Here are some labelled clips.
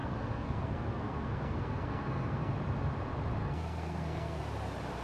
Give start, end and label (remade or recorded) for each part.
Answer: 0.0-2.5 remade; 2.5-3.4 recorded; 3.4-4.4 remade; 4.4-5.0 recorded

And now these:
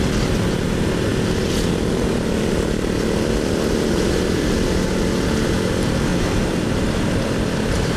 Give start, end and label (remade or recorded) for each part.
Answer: 0.0-6.1 recorded; 6.1-7.1 remade; 7.1-8.0 recorded

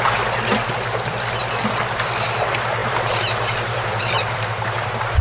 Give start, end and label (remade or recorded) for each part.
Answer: 0.0-2.8 recorded; 2.8-5.2 remade

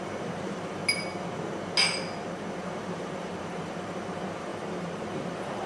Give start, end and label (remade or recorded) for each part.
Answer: 0.0-0.8 remade; 0.8-2.6 recorded; 2.6-5.7 remade

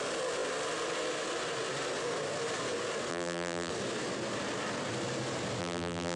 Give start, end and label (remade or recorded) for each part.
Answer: 0.0-3.1 recorded; 3.1-3.7 remade; 3.7-5.6 recorded; 5.6-6.2 remade